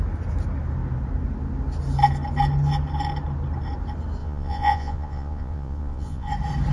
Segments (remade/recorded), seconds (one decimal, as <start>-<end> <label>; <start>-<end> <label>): 0.0-4.2 recorded; 4.2-6.3 remade; 6.3-6.7 recorded